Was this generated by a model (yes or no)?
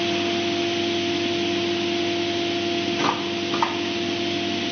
no